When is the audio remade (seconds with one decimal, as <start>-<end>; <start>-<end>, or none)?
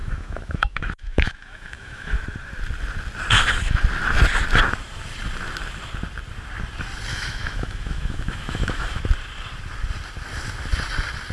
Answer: 0.0-2.2; 7.1-9.0